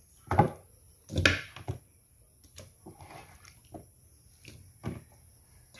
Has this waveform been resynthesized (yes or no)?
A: no